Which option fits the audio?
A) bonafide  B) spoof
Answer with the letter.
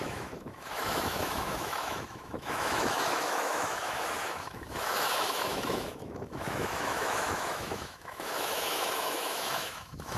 B